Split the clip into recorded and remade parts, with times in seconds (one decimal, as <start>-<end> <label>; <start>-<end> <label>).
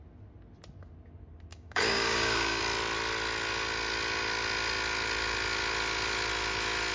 0.0-1.5 recorded; 1.5-2.6 remade; 2.6-6.9 recorded